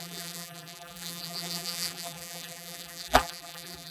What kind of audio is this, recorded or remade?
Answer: remade